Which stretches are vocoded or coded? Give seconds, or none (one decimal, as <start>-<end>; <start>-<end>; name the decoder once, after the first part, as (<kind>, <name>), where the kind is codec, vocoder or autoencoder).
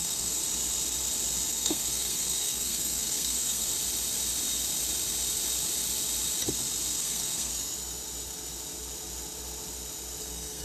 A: 0.0-0.4 (codec, SNAC); 1.5-3.7; 7.0-7.5; 10.2-10.6